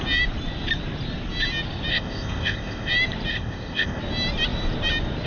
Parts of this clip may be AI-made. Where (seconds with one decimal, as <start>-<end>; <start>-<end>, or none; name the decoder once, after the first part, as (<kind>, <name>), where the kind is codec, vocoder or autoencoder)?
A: 1.9-2.9 (codec, ZipCodec); 3.3-4.0